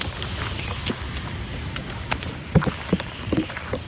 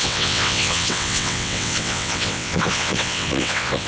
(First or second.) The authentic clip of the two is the first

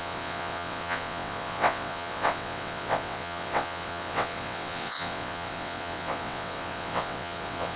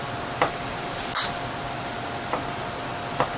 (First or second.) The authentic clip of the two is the second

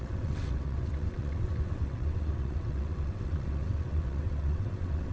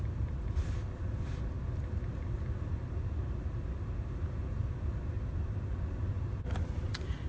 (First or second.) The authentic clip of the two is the second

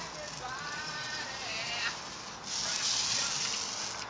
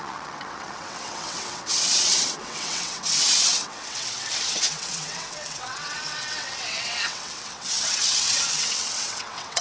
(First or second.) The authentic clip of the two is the first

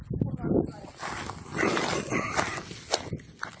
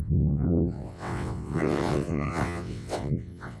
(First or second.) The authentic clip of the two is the first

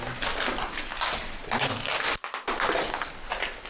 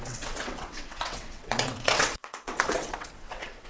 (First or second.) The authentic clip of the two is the first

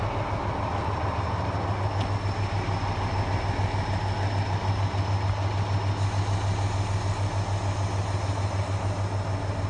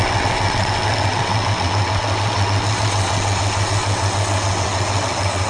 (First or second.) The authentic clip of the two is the first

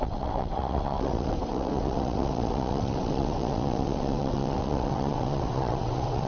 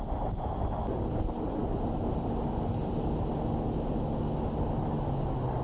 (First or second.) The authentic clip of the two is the second